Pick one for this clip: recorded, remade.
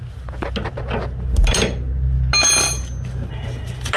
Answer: recorded